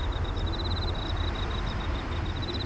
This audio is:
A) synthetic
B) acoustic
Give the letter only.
B